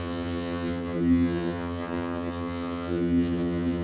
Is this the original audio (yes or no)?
no